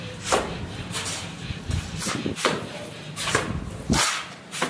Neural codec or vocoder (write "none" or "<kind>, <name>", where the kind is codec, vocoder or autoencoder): vocoder, BigVGAN v2